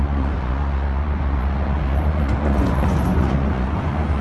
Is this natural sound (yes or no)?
no